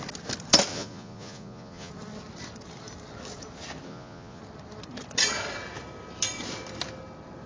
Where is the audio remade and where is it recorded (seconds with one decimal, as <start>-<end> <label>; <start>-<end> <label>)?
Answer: 0.0-0.7 recorded; 0.7-1.9 remade; 1.9-3.9 recorded; 3.9-4.4 remade; 4.4-7.5 recorded